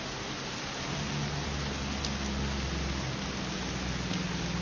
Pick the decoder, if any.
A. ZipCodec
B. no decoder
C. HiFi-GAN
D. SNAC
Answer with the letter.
B